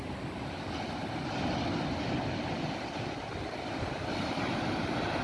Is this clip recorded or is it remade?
remade